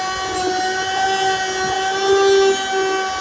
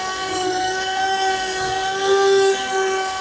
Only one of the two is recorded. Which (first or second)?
first